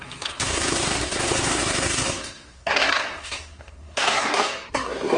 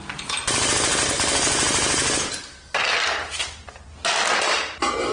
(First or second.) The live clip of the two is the second